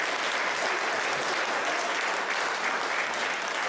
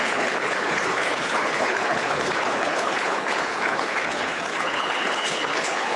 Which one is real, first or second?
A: first